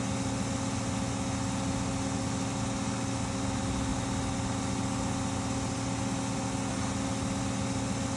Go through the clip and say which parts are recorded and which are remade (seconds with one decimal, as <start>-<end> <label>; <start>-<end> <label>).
0.0-8.2 recorded